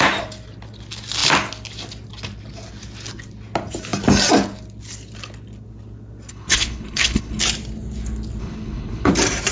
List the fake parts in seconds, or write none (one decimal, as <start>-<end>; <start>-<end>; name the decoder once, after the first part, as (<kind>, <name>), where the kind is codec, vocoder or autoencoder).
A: 6.3-7.4 (codec, HILCodec); 8.4-9.1